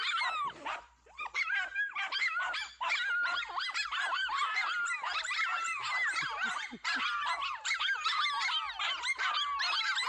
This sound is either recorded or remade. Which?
recorded